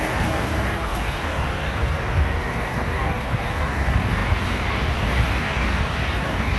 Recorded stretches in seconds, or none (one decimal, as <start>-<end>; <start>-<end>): none